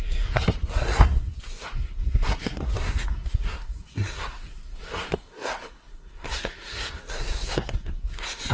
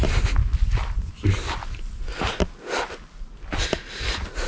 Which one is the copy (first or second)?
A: first